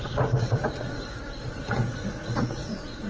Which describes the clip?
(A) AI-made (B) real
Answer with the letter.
A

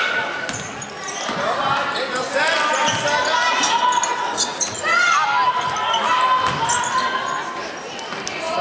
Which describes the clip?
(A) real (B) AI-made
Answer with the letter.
A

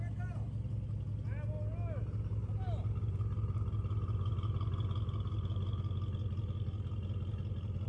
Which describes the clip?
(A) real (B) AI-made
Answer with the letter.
A